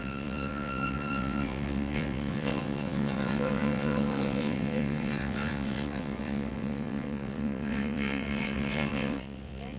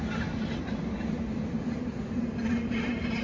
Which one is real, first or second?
second